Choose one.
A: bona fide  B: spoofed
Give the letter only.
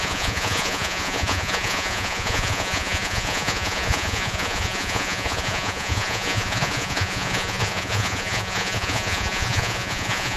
B